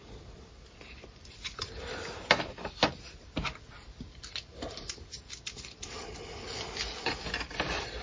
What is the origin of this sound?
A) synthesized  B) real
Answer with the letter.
B